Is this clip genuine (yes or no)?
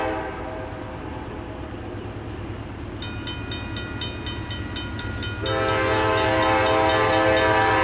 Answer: yes